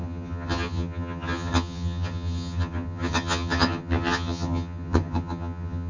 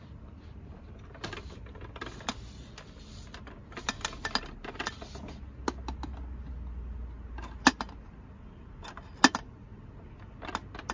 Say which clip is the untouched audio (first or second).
second